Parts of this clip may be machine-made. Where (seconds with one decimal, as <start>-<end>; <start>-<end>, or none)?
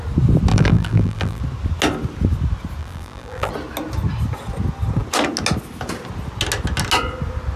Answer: 0.5-1.4; 2.8-3.5